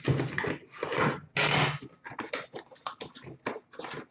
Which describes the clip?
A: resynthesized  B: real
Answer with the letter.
B